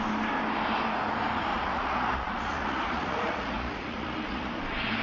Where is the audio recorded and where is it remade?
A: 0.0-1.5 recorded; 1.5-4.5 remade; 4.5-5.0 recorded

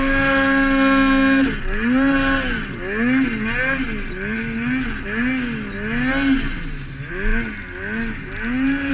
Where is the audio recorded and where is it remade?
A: 0.0-8.9 recorded

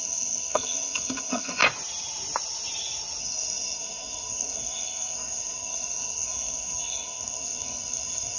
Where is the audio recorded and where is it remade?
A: 0.0-1.6 remade; 1.6-3.2 recorded; 3.2-8.4 remade

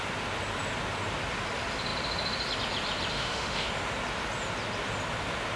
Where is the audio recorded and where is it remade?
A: 0.0-3.1 recorded; 3.1-3.7 remade; 3.7-5.6 recorded

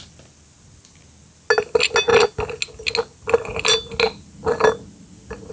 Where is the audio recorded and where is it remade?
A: 0.0-5.5 recorded

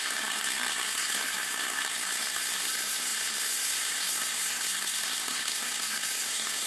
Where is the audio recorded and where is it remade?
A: 0.0-6.7 remade